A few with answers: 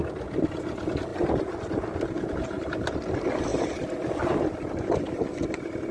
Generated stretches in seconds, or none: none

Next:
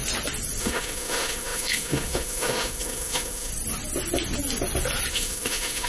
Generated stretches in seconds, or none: 0.6-3.5; 5.1-5.9

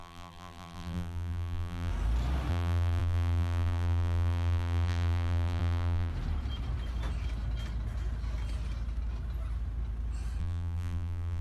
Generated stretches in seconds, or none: 0.0-1.9; 2.5-6.1; 10.4-11.4

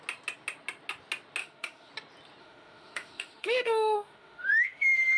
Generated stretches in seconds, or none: 1.4-1.9; 2.4-5.2

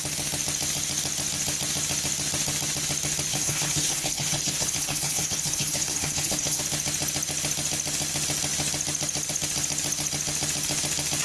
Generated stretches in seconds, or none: 3.3-6.6